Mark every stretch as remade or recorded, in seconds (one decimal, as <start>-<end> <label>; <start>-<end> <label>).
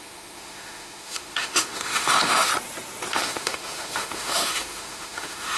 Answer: 0.0-2.5 remade; 2.5-3.1 recorded; 3.1-5.6 remade